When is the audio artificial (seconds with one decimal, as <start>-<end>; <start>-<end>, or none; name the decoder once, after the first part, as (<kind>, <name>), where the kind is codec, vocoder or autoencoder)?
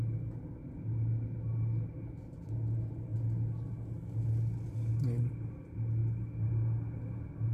none